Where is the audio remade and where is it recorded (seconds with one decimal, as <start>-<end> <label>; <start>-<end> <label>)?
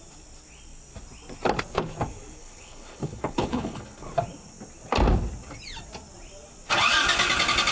0.0-2.4 recorded; 2.4-4.1 remade; 4.1-7.7 recorded